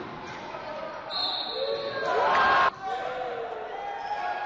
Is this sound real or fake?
real